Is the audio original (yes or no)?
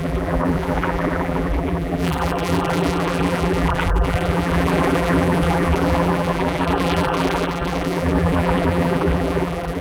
no